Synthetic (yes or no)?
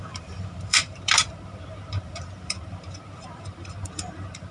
yes